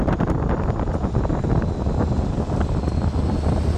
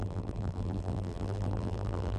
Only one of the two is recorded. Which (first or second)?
first